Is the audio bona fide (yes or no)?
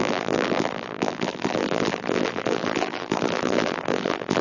no